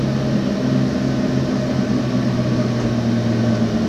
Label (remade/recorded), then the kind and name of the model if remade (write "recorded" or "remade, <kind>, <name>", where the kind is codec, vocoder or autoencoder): recorded